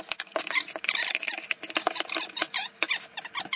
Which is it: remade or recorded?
recorded